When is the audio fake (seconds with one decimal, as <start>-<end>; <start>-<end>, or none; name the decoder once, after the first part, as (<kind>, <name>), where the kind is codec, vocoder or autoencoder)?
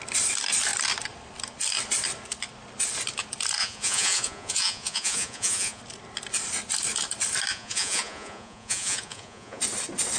3.6-5.8 (vocoder, Vocos); 7.5-9.6